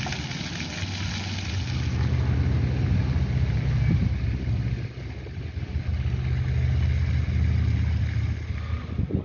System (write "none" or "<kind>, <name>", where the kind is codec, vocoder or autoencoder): none